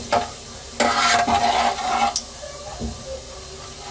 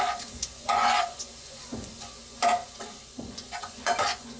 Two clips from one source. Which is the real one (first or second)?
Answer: first